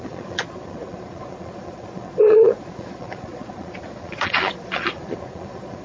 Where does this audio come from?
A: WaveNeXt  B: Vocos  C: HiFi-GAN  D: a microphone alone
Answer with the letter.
B